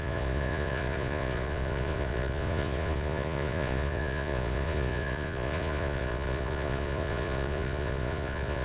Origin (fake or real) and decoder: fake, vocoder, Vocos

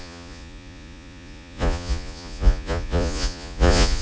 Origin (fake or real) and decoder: fake, vocoder, Vocos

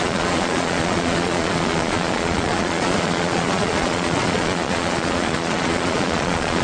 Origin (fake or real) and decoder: fake, vocoder, Vocos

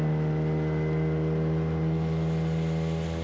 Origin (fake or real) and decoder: real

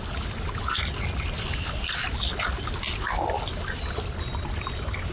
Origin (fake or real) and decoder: real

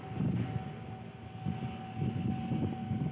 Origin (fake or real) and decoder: real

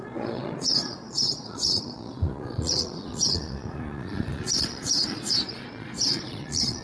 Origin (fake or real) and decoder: fake, vocoder, Vocos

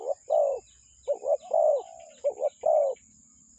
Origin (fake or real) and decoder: real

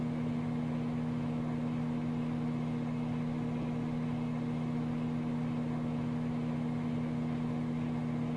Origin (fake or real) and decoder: real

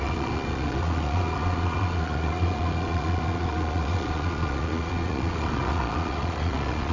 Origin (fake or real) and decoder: fake, vocoder, Vocos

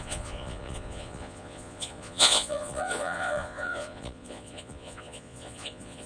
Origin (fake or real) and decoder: fake, vocoder, Vocos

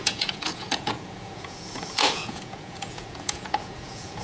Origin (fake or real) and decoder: fake, vocoder, Vocos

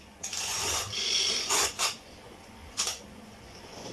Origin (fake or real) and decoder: fake, vocoder, Vocos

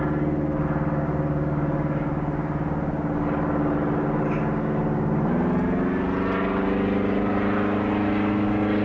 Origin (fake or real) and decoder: real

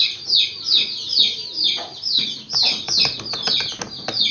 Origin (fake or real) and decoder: real